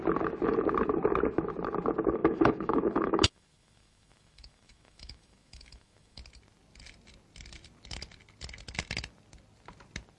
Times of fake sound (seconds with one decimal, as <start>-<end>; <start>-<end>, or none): 2.2-6.2